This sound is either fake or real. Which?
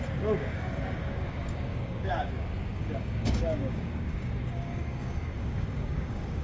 fake